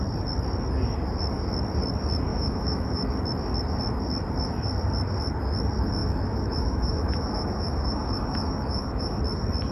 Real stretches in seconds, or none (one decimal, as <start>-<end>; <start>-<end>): 0.0-2.3; 3.1-6.0; 9.2-9.7